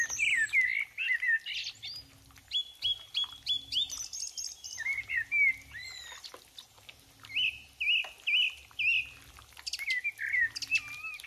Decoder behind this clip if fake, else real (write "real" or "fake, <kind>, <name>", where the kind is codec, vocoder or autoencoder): real